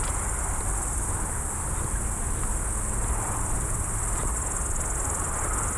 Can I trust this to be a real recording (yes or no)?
yes